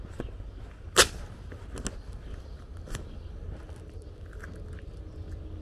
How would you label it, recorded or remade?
recorded